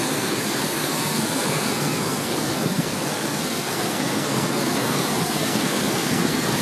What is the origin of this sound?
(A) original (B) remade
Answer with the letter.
B